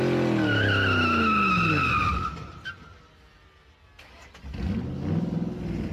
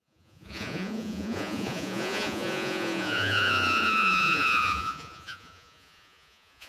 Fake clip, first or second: second